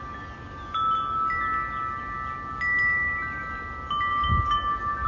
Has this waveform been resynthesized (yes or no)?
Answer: no